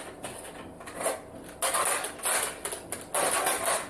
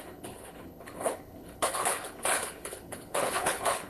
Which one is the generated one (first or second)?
second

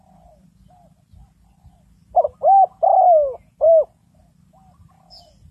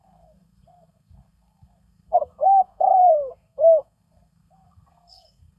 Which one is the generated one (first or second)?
second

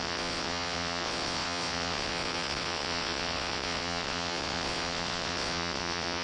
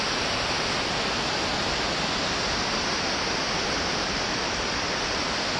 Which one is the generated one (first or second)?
first